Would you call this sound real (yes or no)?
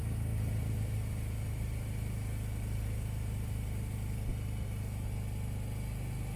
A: yes